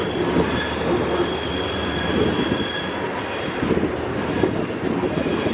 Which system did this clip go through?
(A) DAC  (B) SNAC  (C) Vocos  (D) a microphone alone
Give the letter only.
D